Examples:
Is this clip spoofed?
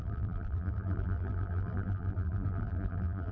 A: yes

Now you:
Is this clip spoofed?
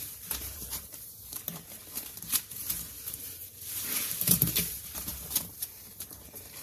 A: yes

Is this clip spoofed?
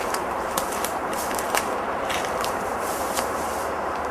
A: yes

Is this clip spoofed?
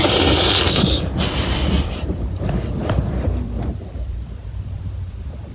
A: yes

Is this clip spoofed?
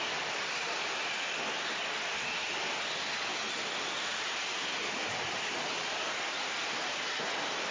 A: yes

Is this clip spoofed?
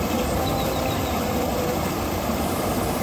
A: yes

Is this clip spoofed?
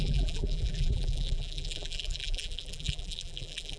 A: yes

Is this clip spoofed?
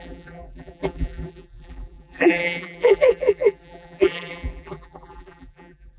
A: yes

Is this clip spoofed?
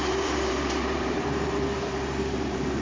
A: yes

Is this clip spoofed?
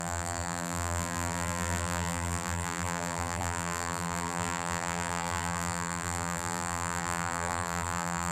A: yes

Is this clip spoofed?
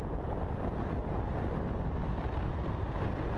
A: no